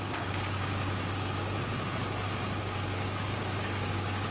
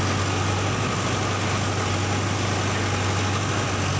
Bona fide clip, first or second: second